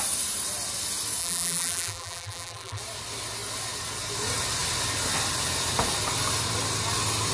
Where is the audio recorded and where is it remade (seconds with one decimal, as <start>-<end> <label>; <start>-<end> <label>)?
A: 0.0-1.2 recorded; 1.2-2.8 remade; 2.8-7.3 recorded